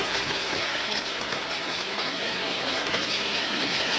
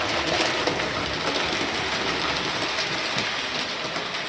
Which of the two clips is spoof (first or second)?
first